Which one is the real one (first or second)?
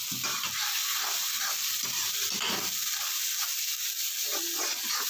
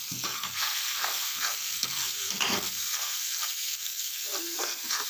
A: first